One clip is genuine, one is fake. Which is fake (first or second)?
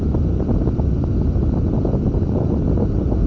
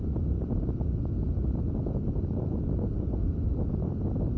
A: first